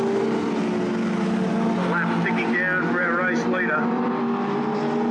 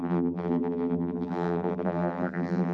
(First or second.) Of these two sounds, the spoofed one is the second